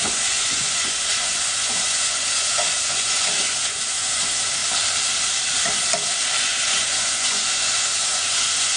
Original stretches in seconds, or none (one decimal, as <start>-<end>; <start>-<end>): 4.6-6.4